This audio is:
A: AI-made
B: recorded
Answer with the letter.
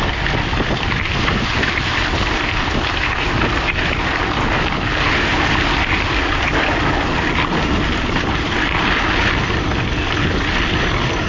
B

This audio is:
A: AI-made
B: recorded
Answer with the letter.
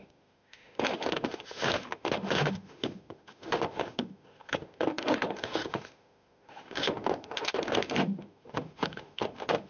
A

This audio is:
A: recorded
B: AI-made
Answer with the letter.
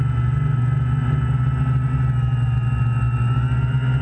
A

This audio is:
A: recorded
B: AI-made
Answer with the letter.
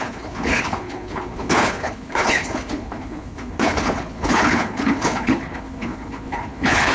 B